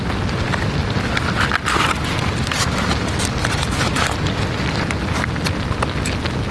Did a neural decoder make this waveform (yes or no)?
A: no